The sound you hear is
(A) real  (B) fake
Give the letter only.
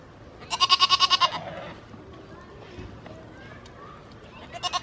A